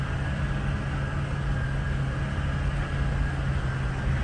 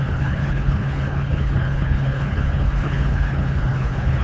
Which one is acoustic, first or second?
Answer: first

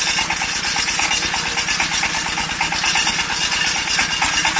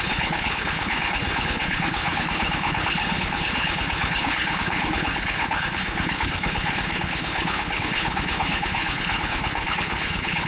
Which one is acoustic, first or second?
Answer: first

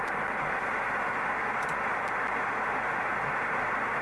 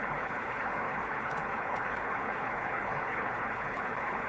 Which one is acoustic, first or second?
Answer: first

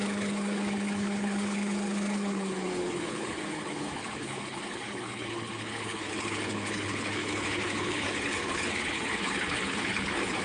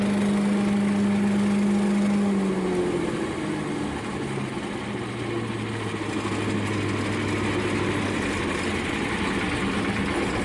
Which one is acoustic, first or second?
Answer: second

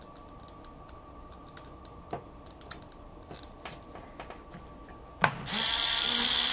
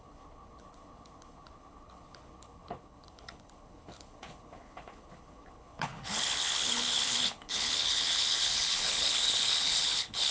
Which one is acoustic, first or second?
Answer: first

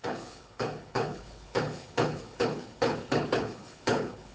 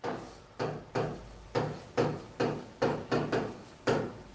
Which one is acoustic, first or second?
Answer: second